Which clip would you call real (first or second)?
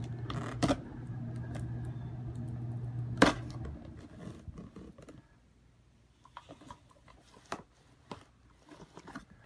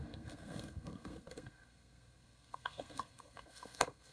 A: first